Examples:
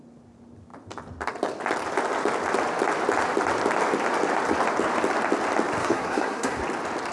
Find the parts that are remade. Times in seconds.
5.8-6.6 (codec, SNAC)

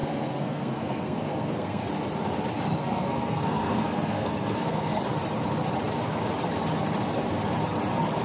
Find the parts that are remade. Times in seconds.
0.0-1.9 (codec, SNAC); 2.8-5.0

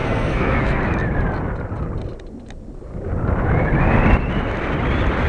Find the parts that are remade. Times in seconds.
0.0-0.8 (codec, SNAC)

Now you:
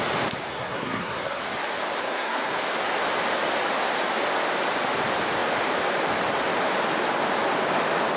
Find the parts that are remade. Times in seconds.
0.5-1.4 (codec, SNAC); 2.0-2.6

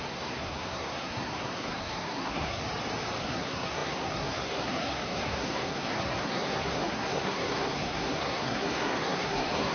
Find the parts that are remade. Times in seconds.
0.0-2.6 (codec, SNAC); 3.2-9.7